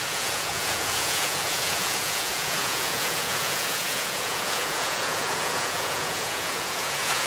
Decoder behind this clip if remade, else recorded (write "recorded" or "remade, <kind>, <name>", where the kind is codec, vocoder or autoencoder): remade, vocoder, Vocos